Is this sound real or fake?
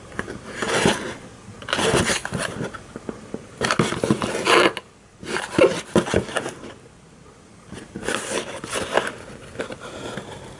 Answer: real